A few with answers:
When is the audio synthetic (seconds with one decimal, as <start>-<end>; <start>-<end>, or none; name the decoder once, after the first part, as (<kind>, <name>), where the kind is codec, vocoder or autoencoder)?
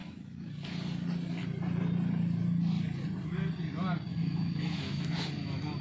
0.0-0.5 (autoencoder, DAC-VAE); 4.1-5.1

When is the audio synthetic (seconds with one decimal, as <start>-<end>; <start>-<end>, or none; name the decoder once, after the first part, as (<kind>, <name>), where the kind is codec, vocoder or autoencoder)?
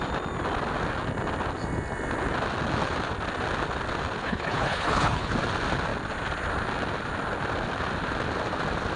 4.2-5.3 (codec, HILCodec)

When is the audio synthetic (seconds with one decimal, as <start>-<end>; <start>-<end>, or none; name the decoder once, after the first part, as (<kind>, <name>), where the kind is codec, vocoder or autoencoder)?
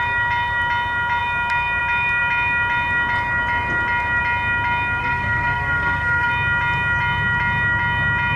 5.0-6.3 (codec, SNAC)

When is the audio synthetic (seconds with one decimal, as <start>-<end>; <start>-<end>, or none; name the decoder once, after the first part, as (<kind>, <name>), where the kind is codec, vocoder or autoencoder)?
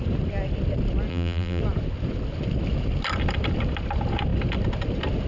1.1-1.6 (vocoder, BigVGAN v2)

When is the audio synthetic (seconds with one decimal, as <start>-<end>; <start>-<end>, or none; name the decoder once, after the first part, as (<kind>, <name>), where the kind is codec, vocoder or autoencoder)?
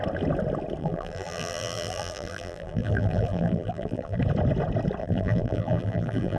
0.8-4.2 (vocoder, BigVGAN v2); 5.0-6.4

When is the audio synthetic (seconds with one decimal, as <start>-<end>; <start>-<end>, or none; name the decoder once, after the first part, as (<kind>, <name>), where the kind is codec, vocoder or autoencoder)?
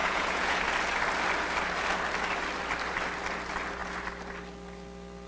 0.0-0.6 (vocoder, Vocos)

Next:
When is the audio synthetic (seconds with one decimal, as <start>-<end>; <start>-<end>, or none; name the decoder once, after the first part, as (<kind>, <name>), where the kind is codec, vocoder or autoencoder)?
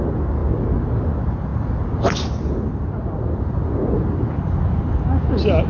none